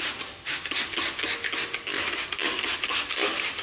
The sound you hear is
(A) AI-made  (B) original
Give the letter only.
B